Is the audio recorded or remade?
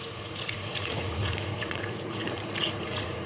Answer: remade